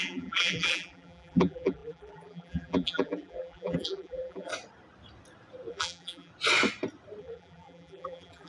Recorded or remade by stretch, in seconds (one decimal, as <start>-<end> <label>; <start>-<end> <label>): 0.0-4.5 remade; 4.5-5.7 recorded; 5.7-6.3 remade; 6.3-7.2 recorded; 7.2-8.5 remade